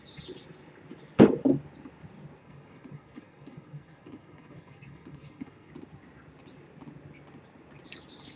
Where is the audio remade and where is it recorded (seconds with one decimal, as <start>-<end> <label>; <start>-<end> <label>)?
0.0-2.4 recorded; 2.4-5.7 remade; 5.7-8.4 recorded